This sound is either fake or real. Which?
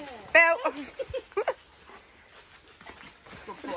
real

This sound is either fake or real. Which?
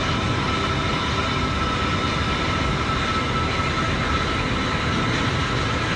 real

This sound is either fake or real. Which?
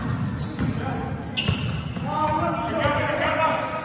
real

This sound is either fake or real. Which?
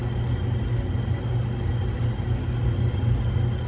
real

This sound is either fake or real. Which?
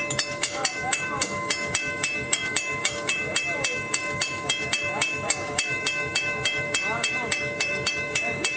fake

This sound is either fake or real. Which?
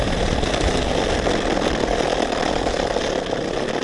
real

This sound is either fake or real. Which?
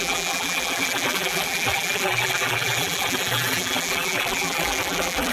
fake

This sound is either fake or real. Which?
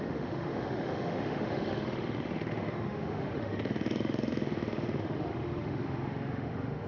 fake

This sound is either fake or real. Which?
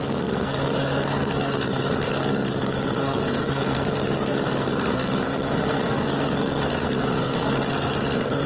fake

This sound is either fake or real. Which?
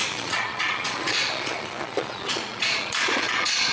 fake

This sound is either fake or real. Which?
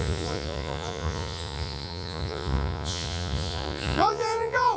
fake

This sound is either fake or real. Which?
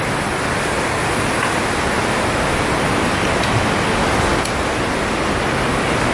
real